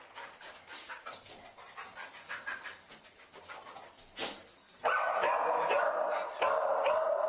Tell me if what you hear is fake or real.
real